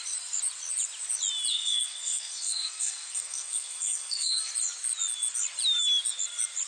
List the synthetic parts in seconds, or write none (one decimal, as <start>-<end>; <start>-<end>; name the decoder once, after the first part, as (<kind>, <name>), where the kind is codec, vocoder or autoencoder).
1.5-4.5 (codec, SNAC)